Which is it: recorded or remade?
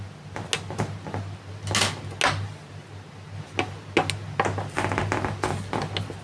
recorded